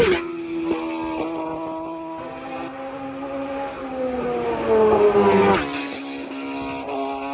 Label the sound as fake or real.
real